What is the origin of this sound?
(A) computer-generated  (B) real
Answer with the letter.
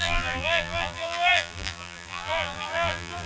A